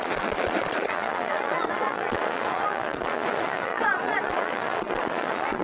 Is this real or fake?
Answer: fake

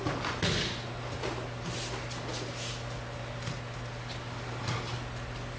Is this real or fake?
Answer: real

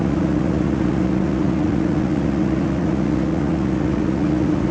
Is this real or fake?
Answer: fake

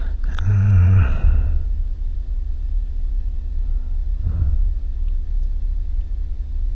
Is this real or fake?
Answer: fake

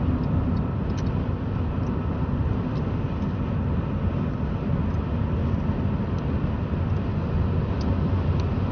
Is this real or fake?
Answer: real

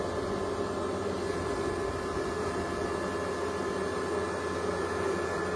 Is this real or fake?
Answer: real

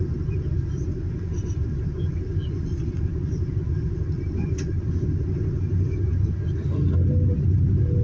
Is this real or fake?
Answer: real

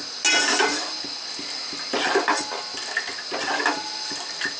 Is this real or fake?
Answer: real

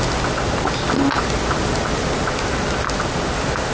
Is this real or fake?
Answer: real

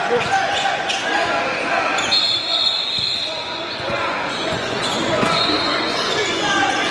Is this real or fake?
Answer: fake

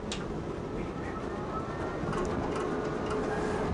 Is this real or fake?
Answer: real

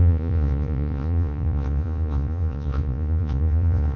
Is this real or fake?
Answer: fake